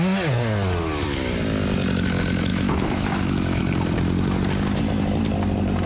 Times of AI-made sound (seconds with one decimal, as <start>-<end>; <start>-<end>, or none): 2.5-3.6